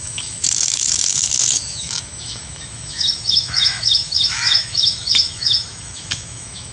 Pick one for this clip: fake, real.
fake